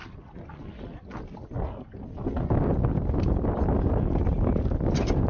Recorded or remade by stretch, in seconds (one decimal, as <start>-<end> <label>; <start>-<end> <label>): 0.0-5.3 recorded